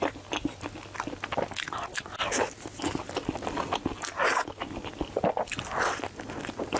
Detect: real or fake real